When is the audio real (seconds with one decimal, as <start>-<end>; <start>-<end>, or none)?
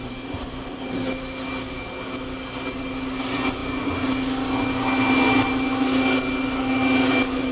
0.0-7.5